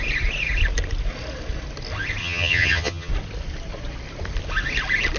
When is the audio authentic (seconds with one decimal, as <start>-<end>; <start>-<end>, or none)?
0.0-2.2; 3.1-5.2